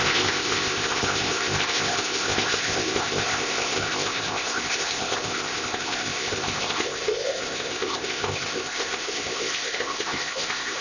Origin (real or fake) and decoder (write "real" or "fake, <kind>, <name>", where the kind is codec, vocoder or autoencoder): fake, codec, ZipCodec